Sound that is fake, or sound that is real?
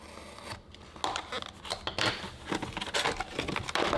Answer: real